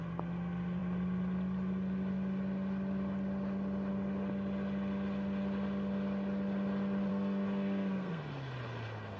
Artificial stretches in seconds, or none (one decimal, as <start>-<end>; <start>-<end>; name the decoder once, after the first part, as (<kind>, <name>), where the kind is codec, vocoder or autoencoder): 7.1-8.2 (codec, SNAC)